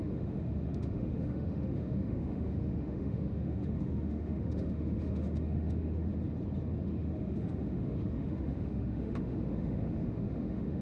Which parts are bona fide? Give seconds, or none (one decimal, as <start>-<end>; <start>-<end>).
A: 6.1-6.8